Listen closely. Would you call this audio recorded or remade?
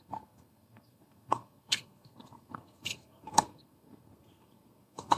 remade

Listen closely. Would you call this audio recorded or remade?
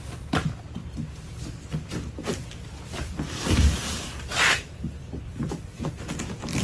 remade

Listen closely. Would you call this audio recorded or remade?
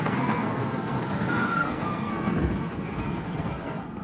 remade